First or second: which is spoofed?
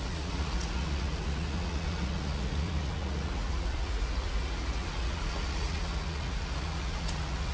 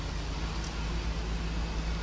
first